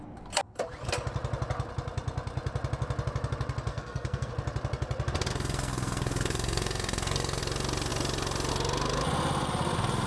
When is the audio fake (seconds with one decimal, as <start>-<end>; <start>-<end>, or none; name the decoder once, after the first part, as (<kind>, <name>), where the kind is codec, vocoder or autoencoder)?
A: 3.7-4.3 (codec, SNAC); 5.3-7.4